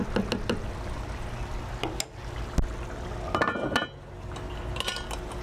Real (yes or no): yes